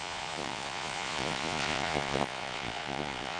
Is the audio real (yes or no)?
no